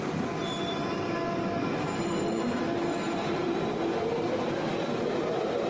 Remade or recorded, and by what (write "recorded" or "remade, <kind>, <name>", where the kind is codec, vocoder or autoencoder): remade, vocoder, BigVGAN v2